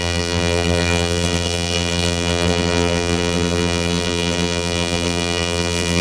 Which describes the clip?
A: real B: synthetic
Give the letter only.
B